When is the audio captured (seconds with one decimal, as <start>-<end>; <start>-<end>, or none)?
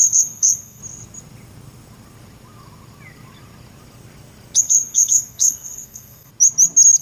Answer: 0.8-4.6; 6.3-7.0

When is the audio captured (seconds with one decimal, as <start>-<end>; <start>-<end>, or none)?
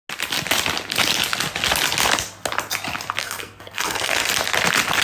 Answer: 0.0-3.2; 4.3-5.0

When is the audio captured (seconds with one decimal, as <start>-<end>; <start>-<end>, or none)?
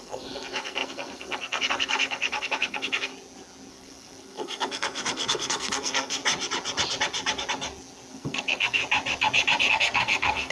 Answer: 3.1-3.7; 6.2-8.1; 8.8-9.7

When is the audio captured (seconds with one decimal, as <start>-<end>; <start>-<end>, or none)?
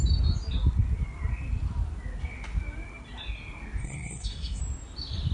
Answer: 0.0-3.8; 4.6-5.3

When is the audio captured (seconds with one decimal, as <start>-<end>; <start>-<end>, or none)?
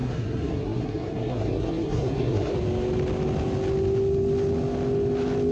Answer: 2.5-5.5